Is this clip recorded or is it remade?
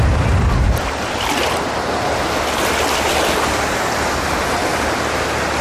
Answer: recorded